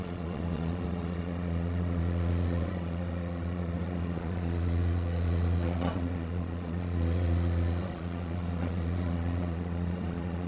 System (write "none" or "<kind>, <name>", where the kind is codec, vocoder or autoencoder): vocoder, Vocos